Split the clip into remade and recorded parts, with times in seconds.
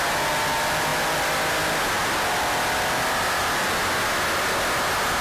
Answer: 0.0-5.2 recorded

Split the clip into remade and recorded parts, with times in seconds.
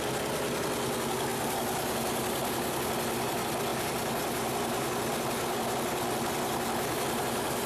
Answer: 0.0-7.7 recorded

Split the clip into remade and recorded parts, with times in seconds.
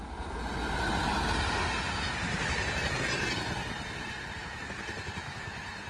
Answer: 0.0-5.9 recorded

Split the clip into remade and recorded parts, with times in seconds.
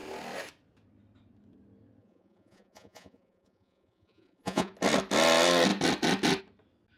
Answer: 0.0-2.0 recorded; 2.0-4.7 remade; 4.7-7.0 recorded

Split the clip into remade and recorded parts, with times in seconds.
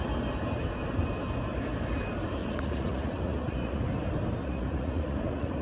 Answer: 0.0-2.4 recorded; 2.4-3.8 remade; 3.8-4.4 recorded; 4.4-5.6 remade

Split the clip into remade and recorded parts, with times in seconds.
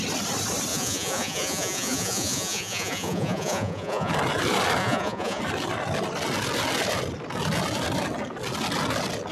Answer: 0.0-0.7 recorded; 0.7-4.1 remade; 4.1-4.8 recorded; 4.8-5.4 remade; 5.4-9.3 recorded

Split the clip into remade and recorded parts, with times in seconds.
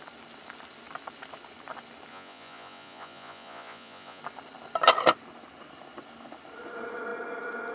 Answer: 0.0-2.1 recorded; 2.1-4.2 remade; 4.2-7.7 recorded